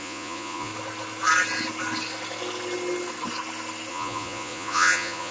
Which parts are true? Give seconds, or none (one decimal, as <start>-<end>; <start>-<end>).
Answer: 0.7-3.9